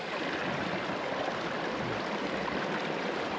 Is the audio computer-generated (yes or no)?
yes